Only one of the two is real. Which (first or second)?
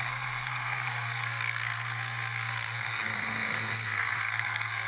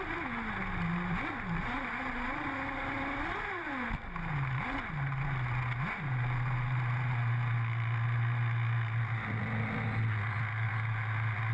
second